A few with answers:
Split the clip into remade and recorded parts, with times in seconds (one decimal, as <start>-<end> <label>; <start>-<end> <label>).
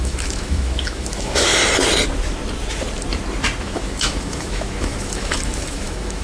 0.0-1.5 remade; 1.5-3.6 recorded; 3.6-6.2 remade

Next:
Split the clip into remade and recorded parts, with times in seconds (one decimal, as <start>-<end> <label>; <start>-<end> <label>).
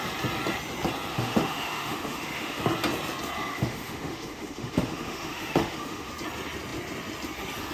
0.0-1.1 recorded; 1.1-2.6 remade; 2.6-3.5 recorded; 3.5-6.1 remade; 6.1-7.7 recorded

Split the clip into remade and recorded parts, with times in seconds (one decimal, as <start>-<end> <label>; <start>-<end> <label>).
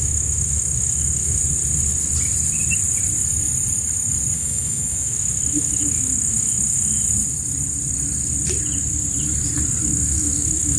0.0-1.4 remade; 1.4-4.4 recorded; 4.4-7.0 remade; 7.0-9.8 recorded; 9.8-10.8 remade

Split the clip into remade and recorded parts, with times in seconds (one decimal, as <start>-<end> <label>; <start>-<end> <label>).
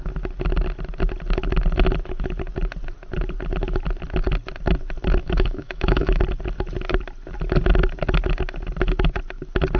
0.0-5.2 recorded; 5.2-6.2 remade; 6.2-9.8 recorded